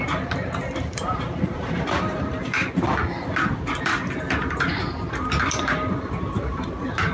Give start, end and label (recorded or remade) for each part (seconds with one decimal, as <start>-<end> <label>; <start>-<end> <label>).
0.0-3.0 remade; 3.0-5.1 recorded; 5.1-7.1 remade